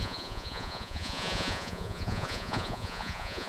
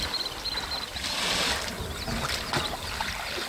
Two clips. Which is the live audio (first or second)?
second